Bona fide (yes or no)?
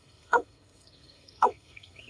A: no